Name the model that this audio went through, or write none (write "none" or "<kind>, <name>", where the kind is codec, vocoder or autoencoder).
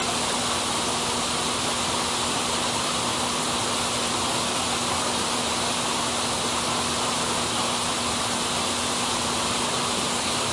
none